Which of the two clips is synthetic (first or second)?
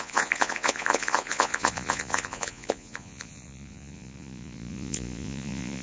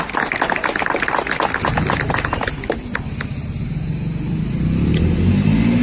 first